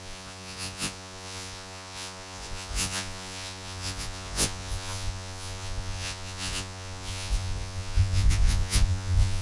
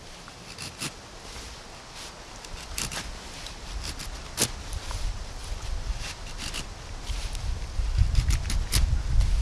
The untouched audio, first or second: second